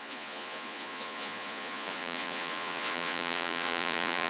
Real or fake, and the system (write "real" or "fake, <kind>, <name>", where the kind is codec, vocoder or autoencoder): fake, vocoder, Vocos